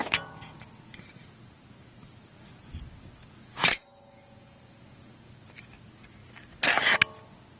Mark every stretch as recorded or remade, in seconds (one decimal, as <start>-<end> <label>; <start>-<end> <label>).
0.0-0.6 remade; 0.6-3.2 recorded; 3.2-5.3 remade; 5.3-7.6 recorded